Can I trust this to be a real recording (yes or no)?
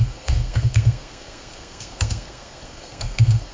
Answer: no